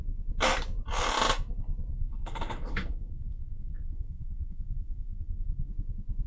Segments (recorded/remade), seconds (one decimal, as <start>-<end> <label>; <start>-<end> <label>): 0.0-1.9 recorded; 1.9-5.7 remade; 5.7-6.3 recorded